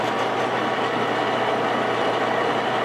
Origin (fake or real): real